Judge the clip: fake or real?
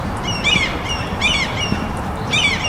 fake